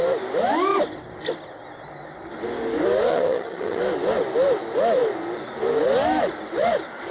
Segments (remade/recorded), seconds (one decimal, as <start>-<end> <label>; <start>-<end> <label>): 0.0-3.1 recorded; 3.1-3.8 remade; 3.8-7.1 recorded